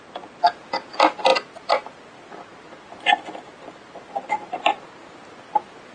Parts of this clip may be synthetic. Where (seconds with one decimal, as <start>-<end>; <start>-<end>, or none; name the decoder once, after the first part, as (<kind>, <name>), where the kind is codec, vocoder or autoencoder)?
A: none